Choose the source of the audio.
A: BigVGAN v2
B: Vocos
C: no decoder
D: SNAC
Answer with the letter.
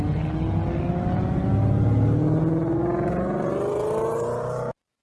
C